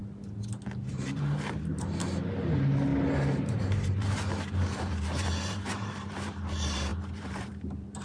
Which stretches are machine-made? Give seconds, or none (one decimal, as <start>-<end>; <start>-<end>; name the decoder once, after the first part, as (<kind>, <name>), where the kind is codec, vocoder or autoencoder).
0.9-2.9 (vocoder, BigVGAN v2); 3.4-8.0